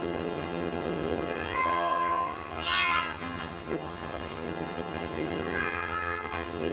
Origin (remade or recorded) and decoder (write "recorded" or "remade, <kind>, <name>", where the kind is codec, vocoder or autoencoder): remade, vocoder, HiFi-GAN